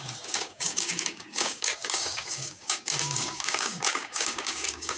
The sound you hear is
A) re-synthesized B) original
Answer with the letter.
A